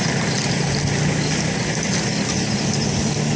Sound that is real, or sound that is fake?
real